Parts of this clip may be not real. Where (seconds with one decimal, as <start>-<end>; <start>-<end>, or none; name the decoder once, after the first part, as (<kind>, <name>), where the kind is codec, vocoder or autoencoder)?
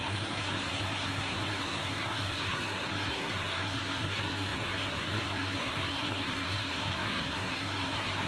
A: 0.0-8.3 (codec, SNAC)